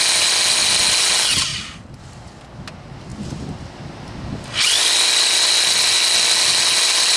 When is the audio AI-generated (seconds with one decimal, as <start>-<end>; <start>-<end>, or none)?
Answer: none